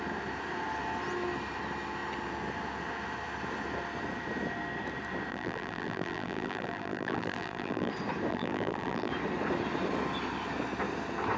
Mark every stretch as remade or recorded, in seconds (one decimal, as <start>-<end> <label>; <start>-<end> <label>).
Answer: 0.0-5.3 recorded; 5.3-7.9 remade; 7.9-8.3 recorded; 8.3-9.1 remade; 9.1-11.4 recorded